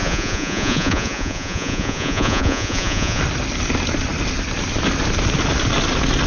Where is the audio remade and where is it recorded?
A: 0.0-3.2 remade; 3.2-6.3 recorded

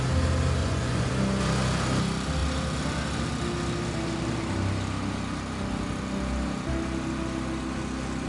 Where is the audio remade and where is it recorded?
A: 0.0-0.6 recorded; 0.6-1.1 remade; 1.1-8.3 recorded

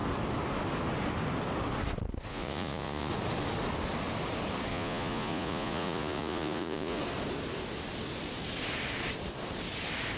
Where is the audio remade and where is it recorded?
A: 0.0-2.3 recorded; 2.3-3.1 remade; 3.1-4.7 recorded; 4.7-7.0 remade; 7.0-10.2 recorded

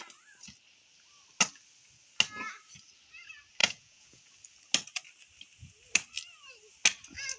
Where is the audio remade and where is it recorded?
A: 0.0-3.6 recorded; 3.6-4.2 remade; 4.2-7.4 recorded